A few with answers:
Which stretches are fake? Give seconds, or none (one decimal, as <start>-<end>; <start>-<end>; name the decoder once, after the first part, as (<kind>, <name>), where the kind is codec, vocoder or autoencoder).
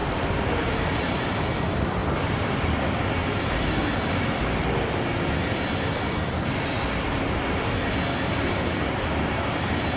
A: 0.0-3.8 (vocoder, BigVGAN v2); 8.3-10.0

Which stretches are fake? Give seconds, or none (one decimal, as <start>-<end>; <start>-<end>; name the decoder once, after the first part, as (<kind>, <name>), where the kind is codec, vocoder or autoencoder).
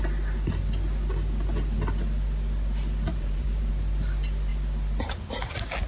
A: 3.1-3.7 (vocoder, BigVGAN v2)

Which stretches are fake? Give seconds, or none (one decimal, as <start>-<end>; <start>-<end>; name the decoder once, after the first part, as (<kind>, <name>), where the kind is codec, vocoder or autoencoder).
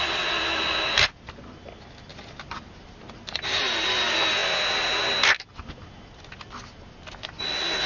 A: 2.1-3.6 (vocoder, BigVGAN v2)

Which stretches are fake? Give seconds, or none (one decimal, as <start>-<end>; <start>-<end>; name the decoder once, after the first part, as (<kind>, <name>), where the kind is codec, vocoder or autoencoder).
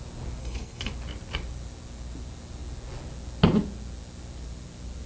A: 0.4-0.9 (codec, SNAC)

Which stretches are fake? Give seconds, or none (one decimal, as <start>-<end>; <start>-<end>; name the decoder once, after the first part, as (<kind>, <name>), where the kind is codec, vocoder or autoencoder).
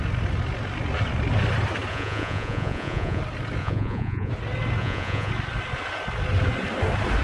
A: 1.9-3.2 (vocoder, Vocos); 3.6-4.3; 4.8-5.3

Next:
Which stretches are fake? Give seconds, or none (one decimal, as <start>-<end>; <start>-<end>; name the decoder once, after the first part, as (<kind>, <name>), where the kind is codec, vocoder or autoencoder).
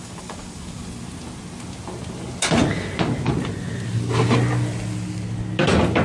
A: 0.0-0.8 (codec, DAC)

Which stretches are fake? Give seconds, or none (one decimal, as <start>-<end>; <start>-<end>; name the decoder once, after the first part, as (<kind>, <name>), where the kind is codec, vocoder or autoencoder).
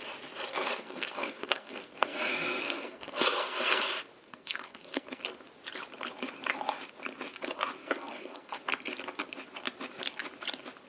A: 0.5-3.8 (codec, SNAC); 4.2-5.2; 7.8-8.6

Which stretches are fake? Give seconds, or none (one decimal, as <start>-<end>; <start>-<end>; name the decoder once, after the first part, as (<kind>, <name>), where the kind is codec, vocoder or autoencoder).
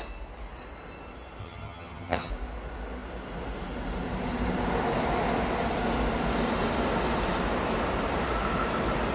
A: 1.4-2.3 (vocoder, HiFi-GAN)